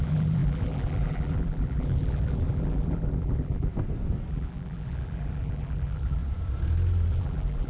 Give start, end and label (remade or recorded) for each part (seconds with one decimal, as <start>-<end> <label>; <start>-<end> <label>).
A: 0.0-3.7 remade; 3.7-4.3 recorded; 4.3-6.2 remade; 6.2-7.1 recorded; 7.1-7.7 remade